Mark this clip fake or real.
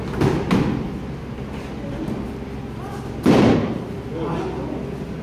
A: real